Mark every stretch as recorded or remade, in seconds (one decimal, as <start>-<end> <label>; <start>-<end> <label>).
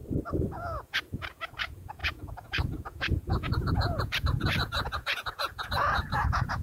0.0-0.5 recorded; 0.5-6.6 remade